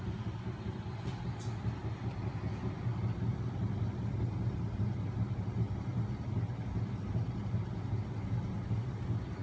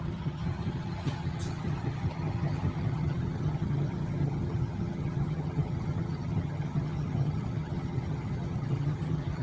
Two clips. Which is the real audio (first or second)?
first